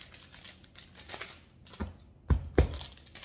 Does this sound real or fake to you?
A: real